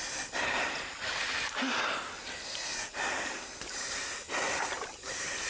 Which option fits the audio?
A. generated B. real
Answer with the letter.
B